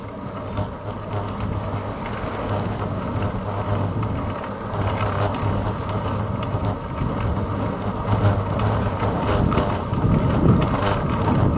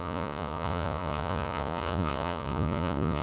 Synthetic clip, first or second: second